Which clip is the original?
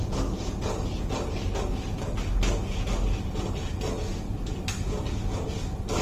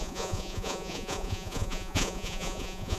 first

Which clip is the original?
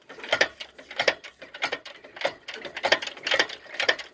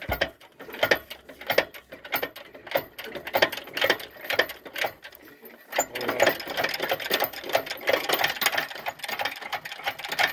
second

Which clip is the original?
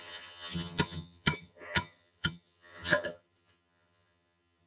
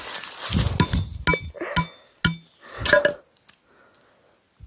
second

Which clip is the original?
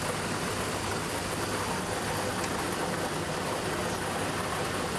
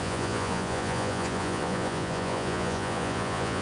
first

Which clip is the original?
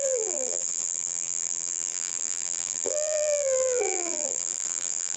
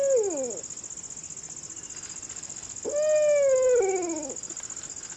second